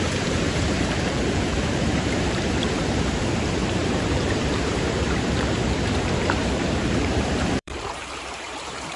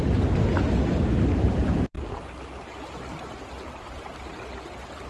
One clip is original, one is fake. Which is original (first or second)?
second